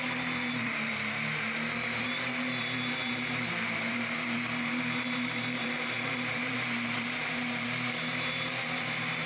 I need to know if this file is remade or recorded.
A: remade